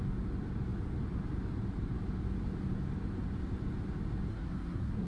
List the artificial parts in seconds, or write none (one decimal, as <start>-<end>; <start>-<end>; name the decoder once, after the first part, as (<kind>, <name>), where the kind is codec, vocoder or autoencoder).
4.3-5.1 (codec, SNAC)